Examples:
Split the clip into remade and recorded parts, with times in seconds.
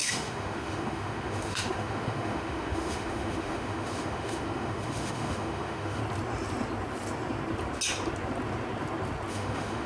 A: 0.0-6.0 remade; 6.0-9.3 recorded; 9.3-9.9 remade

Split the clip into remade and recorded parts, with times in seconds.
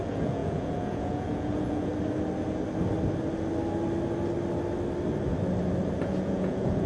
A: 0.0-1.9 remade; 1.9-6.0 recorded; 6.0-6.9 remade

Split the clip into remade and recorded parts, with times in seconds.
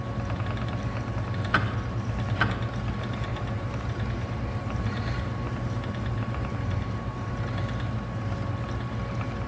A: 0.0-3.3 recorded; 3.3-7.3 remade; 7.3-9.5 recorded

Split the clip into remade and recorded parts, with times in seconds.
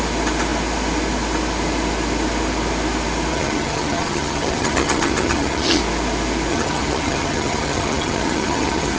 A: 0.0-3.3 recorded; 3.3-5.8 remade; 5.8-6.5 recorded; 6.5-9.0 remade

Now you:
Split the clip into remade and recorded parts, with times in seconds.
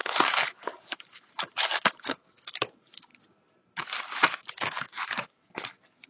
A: 0.0-3.1 remade; 3.1-4.5 recorded; 4.5-6.1 remade